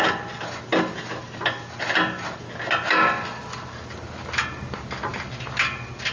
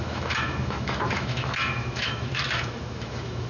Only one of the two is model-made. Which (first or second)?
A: second